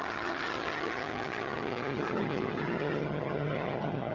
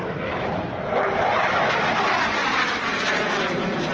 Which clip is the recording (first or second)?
second